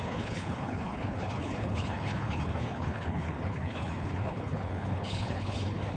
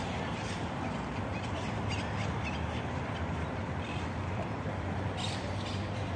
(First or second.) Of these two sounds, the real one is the second